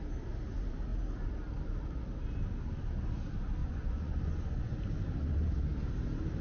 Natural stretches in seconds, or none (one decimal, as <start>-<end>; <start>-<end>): 0.0-3.6; 4.8-6.4